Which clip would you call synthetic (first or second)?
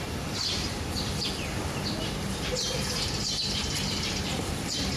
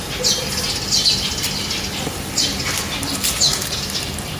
first